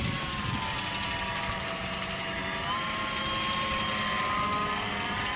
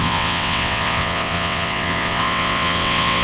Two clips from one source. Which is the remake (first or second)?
second